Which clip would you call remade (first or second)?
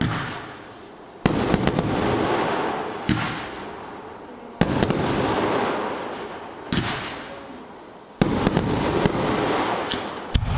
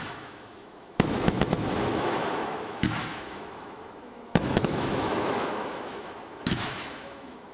second